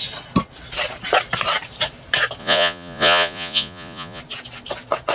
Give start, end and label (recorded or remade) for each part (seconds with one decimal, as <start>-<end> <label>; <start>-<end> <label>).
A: 0.0-2.4 recorded; 2.4-4.2 remade; 4.2-5.1 recorded